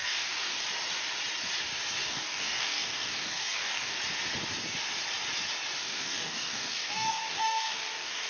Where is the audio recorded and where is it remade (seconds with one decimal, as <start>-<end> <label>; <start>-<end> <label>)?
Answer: 0.0-0.6 remade; 0.6-2.0 recorded; 2.0-4.0 remade; 4.0-5.8 recorded; 5.8-8.3 remade